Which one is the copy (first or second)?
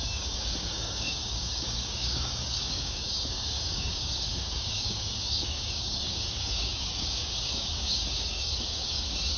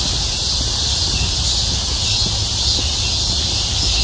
first